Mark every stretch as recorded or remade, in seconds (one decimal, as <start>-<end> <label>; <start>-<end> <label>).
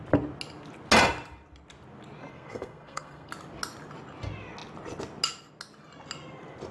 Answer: 0.0-2.3 recorded; 2.3-3.3 remade; 3.3-6.7 recorded